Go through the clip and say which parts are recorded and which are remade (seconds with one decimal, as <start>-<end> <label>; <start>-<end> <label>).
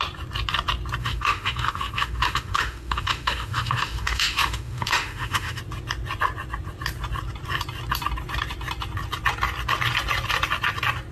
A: 0.0-1.0 recorded; 1.0-5.6 remade; 5.6-11.1 recorded